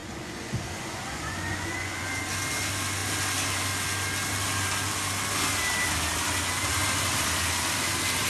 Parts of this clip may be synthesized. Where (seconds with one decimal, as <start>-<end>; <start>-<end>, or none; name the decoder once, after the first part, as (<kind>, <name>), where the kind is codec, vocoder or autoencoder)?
0.0-2.2 (vocoder, Vocos)